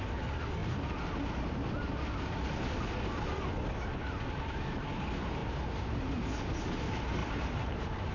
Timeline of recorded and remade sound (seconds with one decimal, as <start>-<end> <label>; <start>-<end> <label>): 0.0-0.6 recorded; 0.6-1.7 remade; 1.7-5.4 recorded; 5.4-6.0 remade; 6.0-7.2 recorded; 7.2-8.1 remade

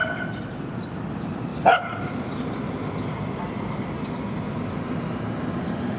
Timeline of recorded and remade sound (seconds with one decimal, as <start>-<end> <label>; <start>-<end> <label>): 0.0-1.1 remade; 1.1-6.0 recorded

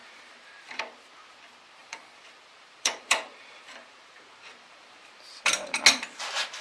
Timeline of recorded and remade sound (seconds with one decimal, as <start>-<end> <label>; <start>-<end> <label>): 0.0-0.8 remade; 0.8-1.8 recorded; 1.8-5.8 remade; 5.8-6.6 recorded

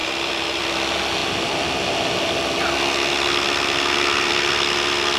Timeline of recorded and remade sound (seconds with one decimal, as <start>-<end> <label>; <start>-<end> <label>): 0.0-0.6 remade; 0.6-5.2 recorded

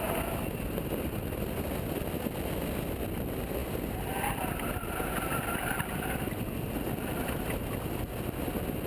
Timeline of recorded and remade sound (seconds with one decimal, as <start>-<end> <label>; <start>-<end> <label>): 0.0-8.9 recorded